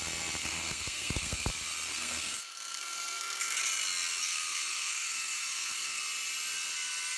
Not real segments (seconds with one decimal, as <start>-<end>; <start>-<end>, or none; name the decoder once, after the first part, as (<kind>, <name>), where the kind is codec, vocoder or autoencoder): 0.4-1.5 (codec, SNAC); 1.9-3.6; 4.2-6.0